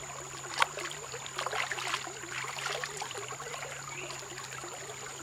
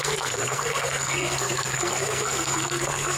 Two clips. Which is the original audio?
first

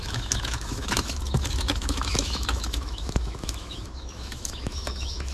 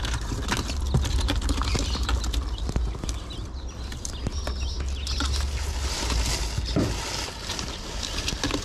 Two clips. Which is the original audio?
second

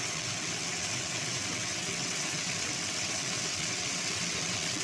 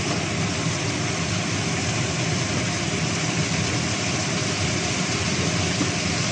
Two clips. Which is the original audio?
second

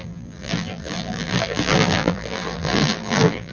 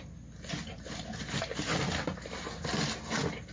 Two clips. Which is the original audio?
second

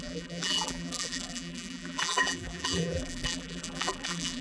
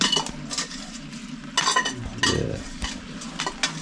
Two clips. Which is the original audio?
second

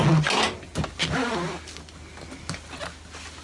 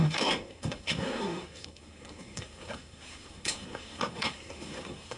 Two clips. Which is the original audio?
first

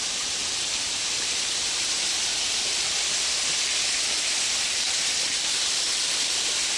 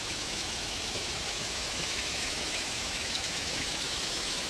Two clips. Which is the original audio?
first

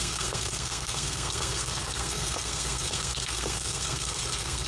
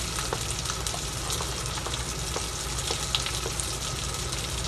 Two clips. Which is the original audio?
second